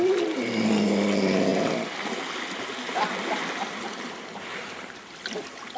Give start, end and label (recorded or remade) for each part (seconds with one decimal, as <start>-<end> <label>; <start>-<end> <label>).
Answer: 0.0-5.8 recorded